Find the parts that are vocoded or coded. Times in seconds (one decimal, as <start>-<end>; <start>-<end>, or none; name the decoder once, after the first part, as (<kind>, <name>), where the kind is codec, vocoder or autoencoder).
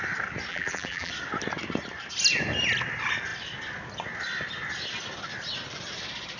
0.5-1.1 (vocoder, BigVGAN v2)